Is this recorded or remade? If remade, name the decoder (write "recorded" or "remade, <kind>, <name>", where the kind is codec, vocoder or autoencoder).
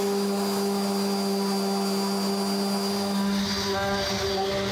recorded